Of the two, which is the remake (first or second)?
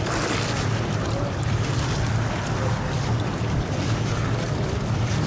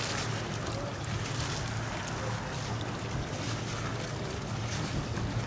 first